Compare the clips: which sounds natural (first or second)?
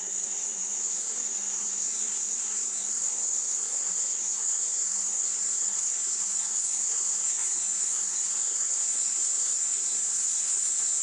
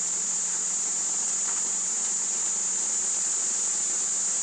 second